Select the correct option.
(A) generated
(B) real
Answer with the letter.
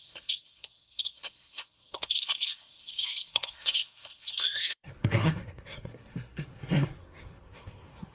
A